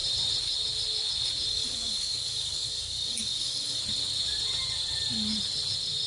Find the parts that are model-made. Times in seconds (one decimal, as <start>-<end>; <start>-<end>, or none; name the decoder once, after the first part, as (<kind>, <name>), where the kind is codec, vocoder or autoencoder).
1.5-3.8 (codec, DAC)